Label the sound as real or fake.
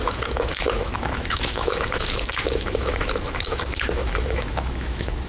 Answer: fake